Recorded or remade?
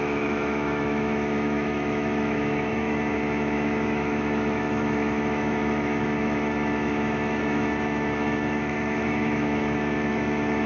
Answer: remade